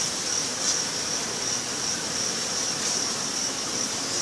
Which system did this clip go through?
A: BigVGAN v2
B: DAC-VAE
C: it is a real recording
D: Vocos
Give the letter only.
C